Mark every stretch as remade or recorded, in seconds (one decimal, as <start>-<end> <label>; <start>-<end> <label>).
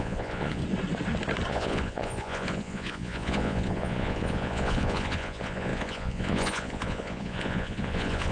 0.0-0.6 remade; 0.6-1.5 recorded; 1.5-8.3 remade